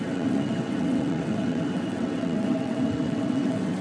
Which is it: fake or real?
fake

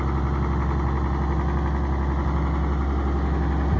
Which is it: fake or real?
real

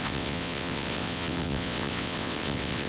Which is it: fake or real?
fake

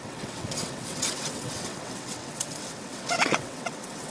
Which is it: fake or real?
fake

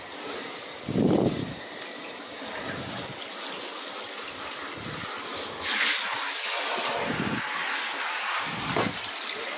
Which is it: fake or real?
real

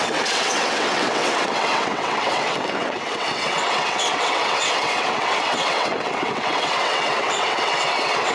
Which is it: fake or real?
fake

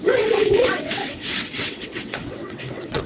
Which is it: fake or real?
fake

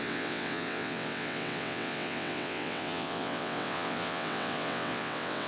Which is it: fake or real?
fake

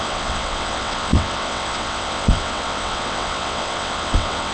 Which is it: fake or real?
fake